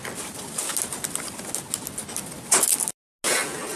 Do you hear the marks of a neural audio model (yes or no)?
no